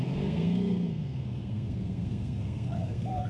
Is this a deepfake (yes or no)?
yes